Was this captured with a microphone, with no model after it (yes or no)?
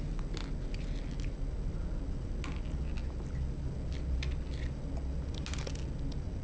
yes